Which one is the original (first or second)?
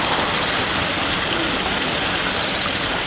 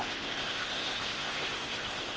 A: first